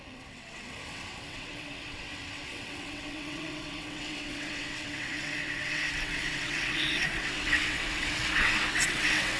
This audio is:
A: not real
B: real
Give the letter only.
A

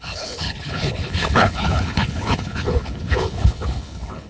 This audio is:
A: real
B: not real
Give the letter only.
B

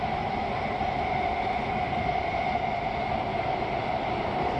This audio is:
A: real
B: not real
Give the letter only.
A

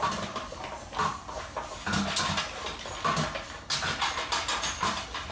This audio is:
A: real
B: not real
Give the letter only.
A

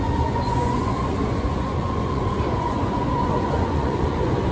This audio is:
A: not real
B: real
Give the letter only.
A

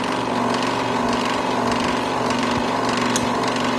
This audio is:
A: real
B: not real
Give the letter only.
A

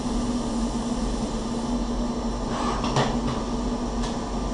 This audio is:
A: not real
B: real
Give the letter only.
B